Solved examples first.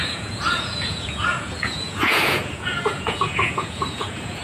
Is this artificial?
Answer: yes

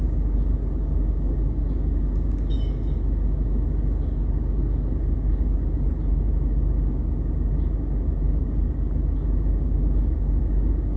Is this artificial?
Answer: no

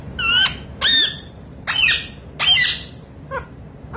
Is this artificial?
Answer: no